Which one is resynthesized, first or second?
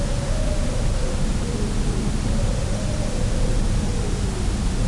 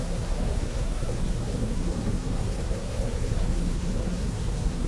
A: second